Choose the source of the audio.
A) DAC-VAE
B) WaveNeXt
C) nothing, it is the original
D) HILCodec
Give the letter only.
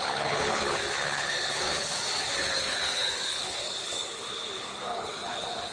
D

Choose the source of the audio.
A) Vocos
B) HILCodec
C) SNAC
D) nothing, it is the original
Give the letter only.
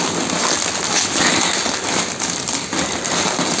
D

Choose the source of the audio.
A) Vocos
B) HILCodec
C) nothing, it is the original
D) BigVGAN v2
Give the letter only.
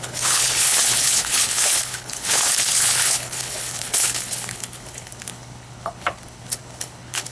B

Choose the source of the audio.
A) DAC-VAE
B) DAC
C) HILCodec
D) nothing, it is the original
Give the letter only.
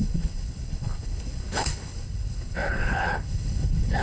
C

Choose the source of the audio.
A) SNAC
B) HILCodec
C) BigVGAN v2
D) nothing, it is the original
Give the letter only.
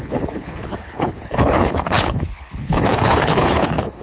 B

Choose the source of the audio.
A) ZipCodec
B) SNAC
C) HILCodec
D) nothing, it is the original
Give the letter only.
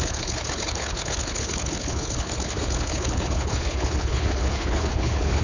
C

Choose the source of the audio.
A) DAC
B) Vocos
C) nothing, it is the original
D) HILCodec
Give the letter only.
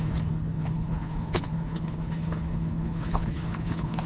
D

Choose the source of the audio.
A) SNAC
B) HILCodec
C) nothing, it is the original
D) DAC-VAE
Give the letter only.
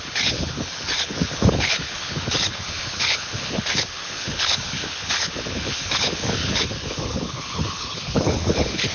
B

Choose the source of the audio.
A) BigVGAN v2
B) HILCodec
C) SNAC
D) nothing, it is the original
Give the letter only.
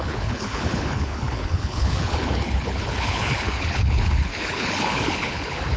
B